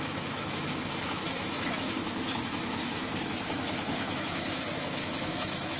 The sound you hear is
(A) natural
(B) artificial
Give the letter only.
B